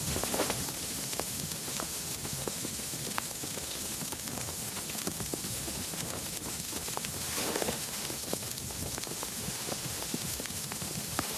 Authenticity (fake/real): fake